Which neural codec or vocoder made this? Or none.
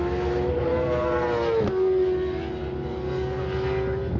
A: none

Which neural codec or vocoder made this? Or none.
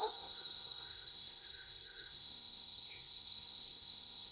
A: codec, SNAC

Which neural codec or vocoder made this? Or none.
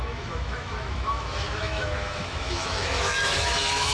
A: autoencoder, DAC-VAE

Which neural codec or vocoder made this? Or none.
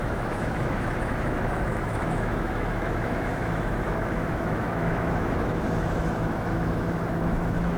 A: autoencoder, DAC-VAE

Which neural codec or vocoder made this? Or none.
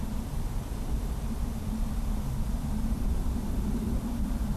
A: vocoder, BigVGAN v2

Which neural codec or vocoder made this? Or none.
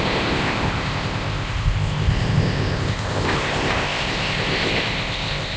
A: codec, ZipCodec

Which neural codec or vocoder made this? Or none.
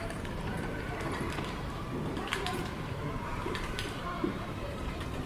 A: vocoder, BigVGAN v2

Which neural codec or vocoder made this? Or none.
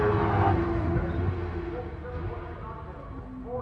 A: none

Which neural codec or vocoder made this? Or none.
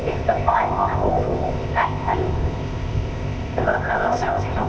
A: codec, ZipCodec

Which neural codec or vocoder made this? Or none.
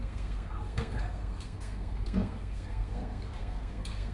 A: codec, SNAC